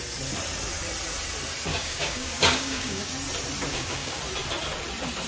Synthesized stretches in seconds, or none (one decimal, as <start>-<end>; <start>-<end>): 1.7-3.1; 3.7-4.2